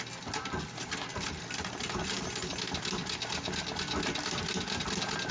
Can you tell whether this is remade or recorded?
recorded